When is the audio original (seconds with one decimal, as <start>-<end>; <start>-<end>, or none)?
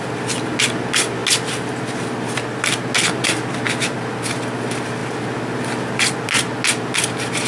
0.0-7.5